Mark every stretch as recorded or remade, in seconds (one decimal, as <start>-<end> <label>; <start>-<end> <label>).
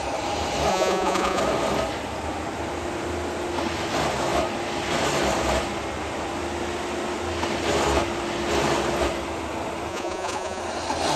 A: 0.0-0.7 recorded; 0.7-1.4 remade; 1.4-9.9 recorded; 9.9-10.6 remade; 10.6-11.2 recorded